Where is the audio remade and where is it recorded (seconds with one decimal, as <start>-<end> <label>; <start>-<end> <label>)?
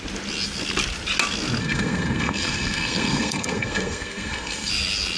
0.0-1.6 recorded; 1.6-4.7 remade; 4.7-5.2 recorded